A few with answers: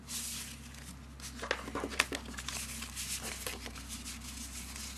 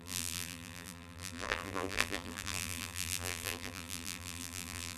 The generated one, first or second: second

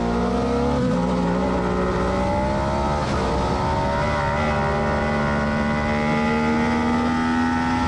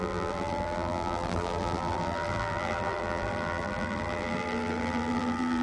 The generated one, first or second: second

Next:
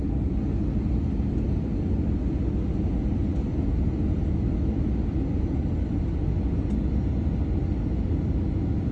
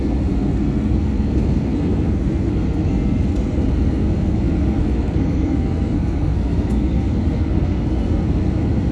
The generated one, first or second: second